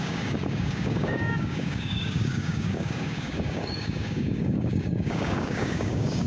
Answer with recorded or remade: remade